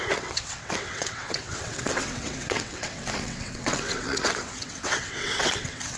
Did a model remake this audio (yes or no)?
yes